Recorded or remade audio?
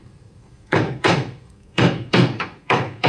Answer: remade